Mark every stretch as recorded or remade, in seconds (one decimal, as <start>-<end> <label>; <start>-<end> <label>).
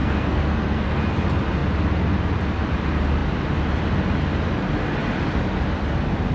0.0-1.0 remade; 1.0-6.3 recorded